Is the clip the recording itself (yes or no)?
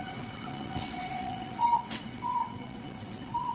no